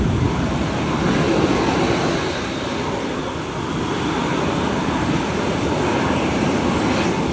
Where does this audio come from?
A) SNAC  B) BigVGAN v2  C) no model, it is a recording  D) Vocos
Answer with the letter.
C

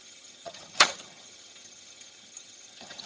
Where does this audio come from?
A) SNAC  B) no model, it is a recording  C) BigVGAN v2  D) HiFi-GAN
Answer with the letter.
D